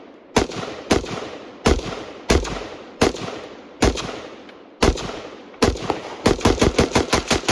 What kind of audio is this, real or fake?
real